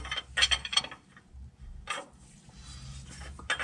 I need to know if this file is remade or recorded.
recorded